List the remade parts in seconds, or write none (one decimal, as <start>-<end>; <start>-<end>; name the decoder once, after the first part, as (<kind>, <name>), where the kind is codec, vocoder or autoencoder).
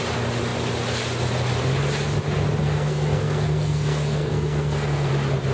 2.6-5.1 (codec, SNAC)